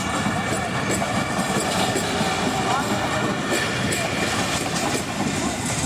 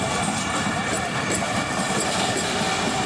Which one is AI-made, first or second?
second